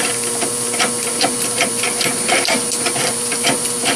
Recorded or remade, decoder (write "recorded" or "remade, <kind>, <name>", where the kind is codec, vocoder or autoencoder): remade, vocoder, BigVGAN v2